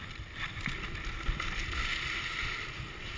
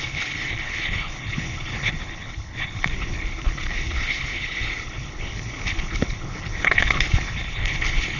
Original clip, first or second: first